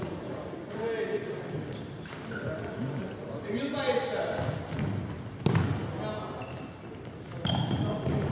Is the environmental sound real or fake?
real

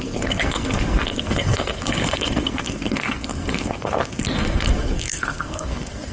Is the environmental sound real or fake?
fake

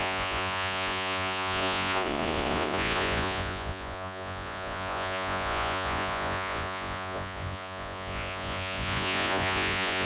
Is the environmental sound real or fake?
fake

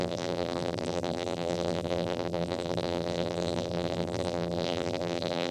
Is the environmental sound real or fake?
fake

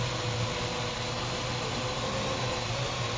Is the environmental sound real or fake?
real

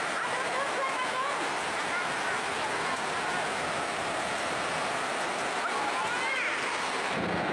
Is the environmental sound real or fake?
real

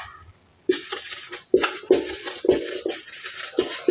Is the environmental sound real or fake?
real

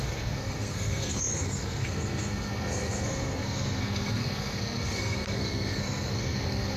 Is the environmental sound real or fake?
fake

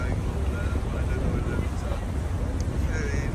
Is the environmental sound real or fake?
real